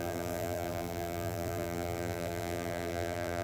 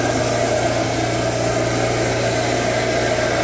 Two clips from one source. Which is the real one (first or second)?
second